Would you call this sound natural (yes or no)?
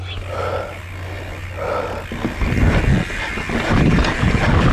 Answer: yes